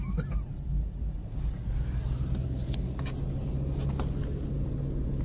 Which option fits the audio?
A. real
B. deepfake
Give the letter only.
A